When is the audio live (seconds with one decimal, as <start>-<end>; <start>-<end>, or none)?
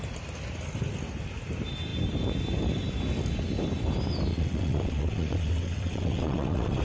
0.0-4.3